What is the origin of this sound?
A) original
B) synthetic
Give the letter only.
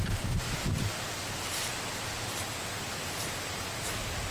A